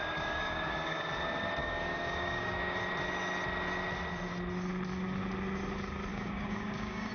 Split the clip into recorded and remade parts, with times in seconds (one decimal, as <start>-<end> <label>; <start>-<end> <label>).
0.0-1.0 remade; 1.0-1.6 recorded; 1.6-2.8 remade; 2.8-6.1 recorded; 6.1-7.1 remade